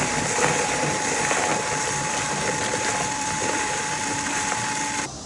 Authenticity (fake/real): fake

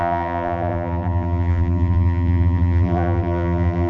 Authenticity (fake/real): fake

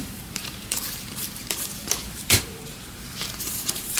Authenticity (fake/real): fake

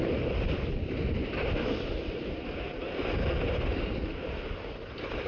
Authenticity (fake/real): real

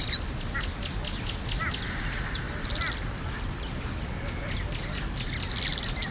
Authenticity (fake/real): real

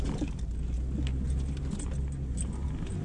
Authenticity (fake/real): real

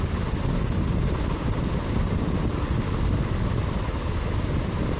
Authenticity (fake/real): real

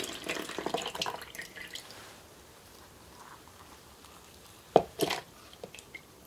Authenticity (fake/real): fake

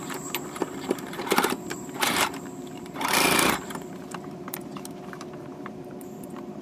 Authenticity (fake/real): fake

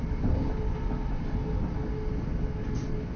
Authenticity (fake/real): real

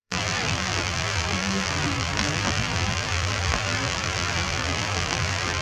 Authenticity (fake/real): fake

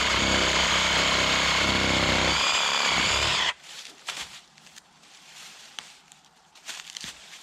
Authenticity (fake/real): fake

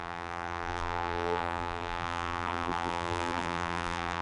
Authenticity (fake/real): fake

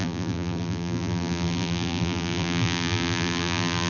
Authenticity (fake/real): fake